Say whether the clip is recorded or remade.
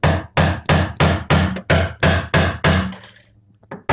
recorded